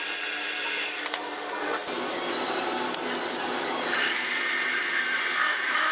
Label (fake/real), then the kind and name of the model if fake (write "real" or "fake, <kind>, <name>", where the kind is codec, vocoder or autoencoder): real